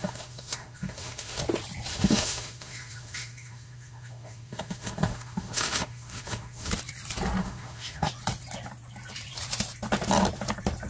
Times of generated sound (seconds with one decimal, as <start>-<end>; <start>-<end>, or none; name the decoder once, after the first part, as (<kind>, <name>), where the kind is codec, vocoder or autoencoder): 0.0-1.4 (autoencoder, DAC-VAE); 1.9-6.7; 7.4-8.1